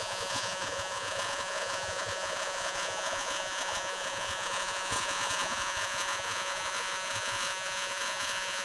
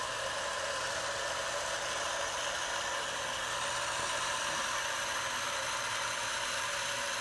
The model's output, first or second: first